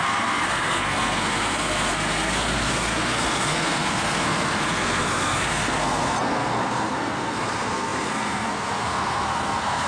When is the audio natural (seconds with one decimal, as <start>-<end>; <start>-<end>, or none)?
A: none